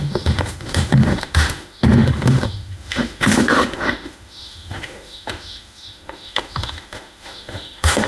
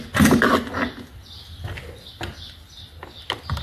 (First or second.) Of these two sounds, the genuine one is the second